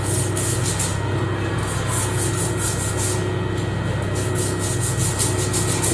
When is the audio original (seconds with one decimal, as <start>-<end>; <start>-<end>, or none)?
0.0-5.9